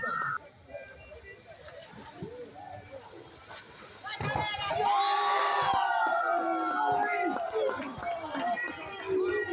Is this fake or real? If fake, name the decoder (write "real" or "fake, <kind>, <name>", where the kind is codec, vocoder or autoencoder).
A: real